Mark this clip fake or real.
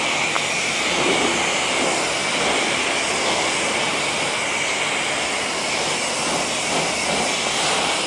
real